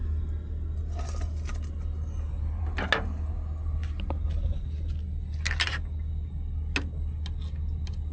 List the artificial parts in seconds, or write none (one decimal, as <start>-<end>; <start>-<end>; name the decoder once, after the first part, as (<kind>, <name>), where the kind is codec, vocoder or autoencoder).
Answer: none